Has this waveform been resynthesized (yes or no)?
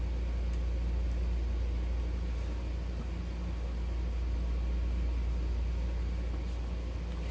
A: no